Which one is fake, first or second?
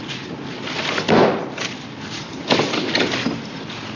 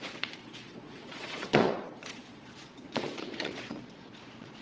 second